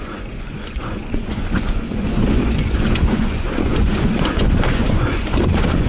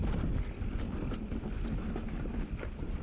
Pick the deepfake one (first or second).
first